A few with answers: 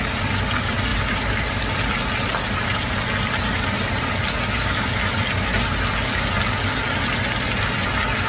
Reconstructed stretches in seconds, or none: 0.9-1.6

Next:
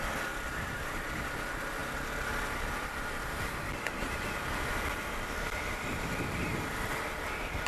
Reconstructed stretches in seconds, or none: none

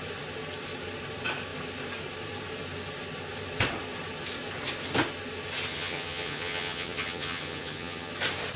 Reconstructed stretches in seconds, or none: 5.7-8.1

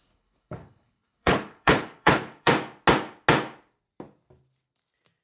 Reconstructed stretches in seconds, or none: 0.0-2.5

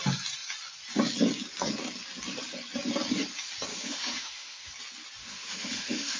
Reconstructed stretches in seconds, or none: 3.7-4.7; 5.2-6.2